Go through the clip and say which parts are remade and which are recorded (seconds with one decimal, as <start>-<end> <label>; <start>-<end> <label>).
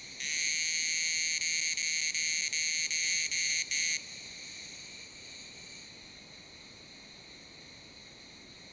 0.0-0.5 remade; 0.5-3.0 recorded; 3.0-6.3 remade; 6.3-8.7 recorded